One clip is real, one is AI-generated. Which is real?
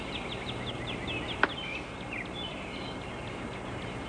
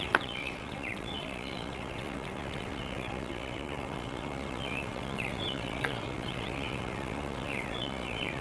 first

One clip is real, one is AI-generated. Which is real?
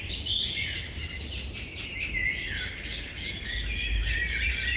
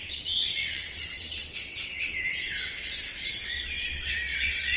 first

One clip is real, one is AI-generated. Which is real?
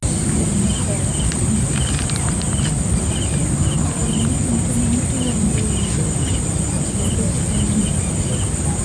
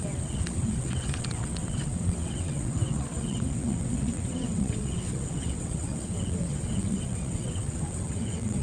first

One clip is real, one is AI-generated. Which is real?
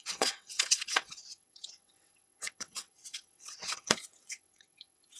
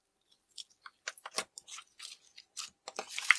second